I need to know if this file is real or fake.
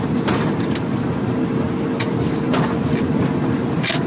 real